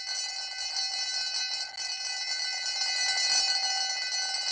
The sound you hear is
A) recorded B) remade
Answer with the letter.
A